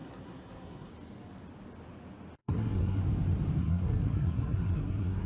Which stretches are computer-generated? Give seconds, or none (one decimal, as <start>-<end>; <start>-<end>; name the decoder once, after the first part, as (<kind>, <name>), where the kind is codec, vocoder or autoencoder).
0.0-0.9 (codec, SNAC); 2.4-3.0; 3.6-5.3